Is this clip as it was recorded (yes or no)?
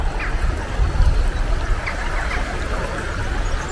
yes